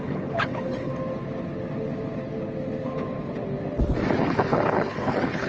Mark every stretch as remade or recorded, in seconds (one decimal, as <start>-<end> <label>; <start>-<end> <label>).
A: 0.0-0.9 remade; 0.9-4.2 recorded; 4.2-5.5 remade